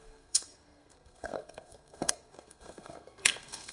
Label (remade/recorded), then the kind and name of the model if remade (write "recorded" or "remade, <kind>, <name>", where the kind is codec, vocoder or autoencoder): remade, codec, SNAC